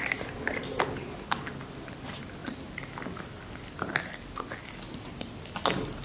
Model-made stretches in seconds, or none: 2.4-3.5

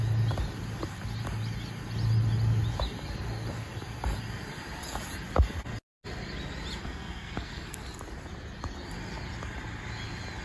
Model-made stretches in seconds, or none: 6.8-7.8

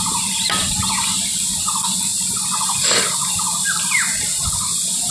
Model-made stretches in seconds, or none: none

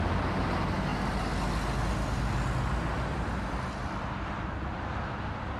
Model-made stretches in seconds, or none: none